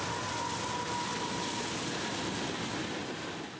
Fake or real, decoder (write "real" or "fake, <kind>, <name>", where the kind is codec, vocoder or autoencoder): real